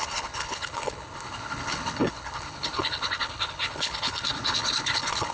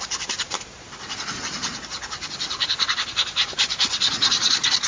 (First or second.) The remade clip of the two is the first